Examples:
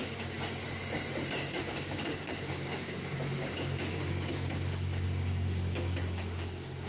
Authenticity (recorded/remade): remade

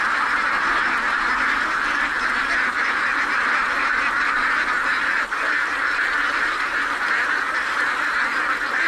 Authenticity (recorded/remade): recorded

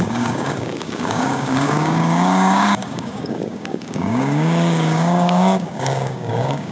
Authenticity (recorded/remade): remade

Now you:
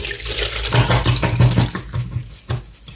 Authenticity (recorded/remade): recorded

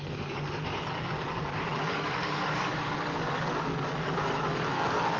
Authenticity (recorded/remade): remade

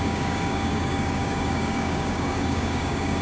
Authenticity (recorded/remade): remade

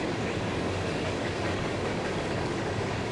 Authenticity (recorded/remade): remade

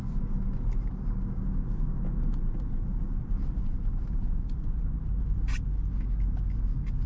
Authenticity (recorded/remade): recorded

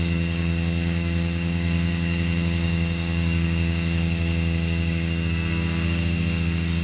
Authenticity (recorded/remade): remade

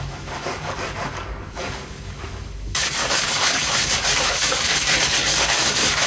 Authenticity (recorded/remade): remade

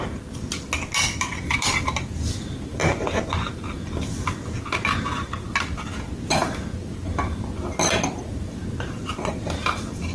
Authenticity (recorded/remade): recorded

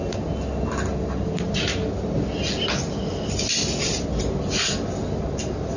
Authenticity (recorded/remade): recorded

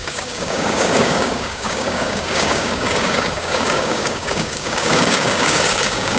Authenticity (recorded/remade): remade